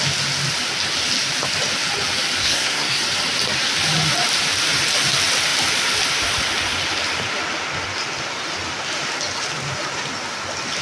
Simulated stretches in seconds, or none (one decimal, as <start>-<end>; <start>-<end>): 2.4-3.0